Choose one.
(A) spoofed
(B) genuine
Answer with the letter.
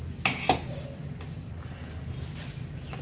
B